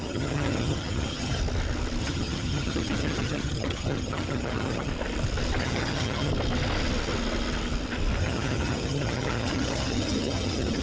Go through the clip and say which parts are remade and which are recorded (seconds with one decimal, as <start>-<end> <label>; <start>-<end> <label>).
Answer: 0.0-1.4 remade; 1.4-2.0 recorded; 2.0-4.9 remade; 4.9-5.6 recorded; 5.6-6.3 remade; 6.3-8.2 recorded; 8.2-10.8 remade